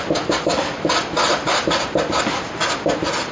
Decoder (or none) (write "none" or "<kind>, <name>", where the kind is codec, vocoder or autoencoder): none